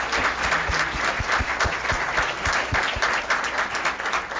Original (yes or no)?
yes